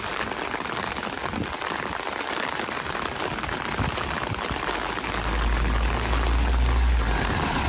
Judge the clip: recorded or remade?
recorded